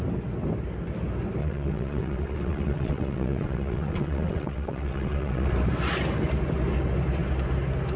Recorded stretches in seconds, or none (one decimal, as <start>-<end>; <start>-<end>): 0.0-1.4; 5.5-8.0